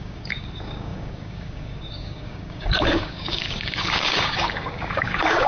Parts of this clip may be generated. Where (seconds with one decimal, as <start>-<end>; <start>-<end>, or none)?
0.0-5.5